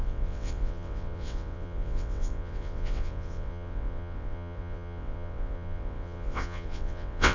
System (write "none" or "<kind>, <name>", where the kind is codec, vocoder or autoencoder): vocoder, WaveNeXt